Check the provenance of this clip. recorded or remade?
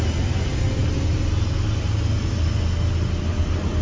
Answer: recorded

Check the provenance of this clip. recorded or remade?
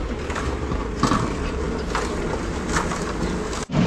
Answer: recorded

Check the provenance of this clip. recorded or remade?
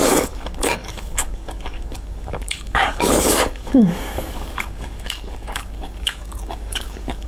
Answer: remade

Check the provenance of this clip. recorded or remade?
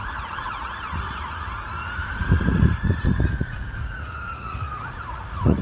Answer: remade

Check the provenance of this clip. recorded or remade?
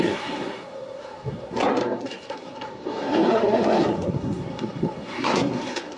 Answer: remade